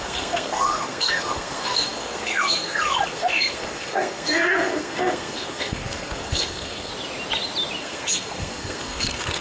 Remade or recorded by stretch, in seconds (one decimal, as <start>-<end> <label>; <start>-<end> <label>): 0.0-6.9 remade; 6.9-7.8 recorded; 7.8-9.4 remade

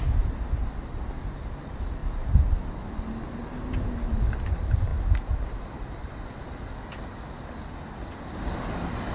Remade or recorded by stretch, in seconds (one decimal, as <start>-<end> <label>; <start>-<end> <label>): 0.0-9.1 recorded

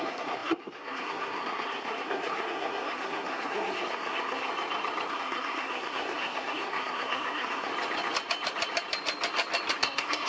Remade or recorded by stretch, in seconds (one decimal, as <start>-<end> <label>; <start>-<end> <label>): 0.0-4.5 remade; 4.5-5.1 recorded; 5.1-7.7 remade; 7.7-9.8 recorded; 9.8-10.3 remade

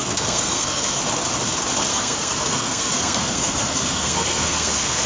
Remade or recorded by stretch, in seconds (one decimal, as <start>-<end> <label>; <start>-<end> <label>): 0.0-1.0 remade; 1.0-1.9 recorded; 1.9-5.1 remade

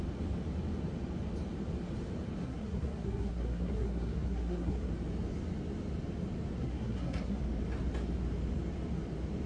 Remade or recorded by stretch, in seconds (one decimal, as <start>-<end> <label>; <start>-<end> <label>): 0.0-2.4 recorded; 2.4-4.9 remade; 4.9-6.6 recorded; 6.6-7.4 remade; 7.4-9.5 recorded

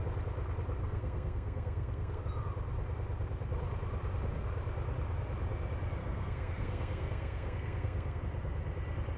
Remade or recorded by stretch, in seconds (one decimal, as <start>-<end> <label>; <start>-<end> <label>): 0.0-0.8 recorded; 0.8-2.2 remade; 2.2-6.0 recorded; 6.0-8.2 remade; 8.2-9.2 recorded